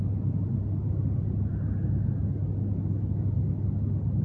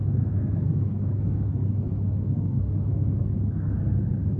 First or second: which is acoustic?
first